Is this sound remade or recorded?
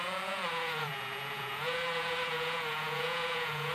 remade